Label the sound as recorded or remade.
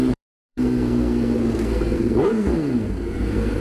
remade